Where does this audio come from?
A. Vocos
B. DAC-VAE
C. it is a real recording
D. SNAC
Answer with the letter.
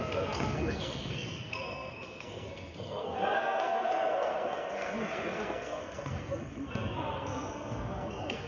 D